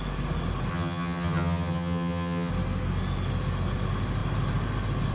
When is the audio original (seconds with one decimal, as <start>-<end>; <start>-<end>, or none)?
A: 0.0-0.7; 2.5-5.1